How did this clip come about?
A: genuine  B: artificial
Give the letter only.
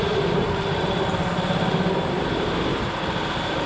B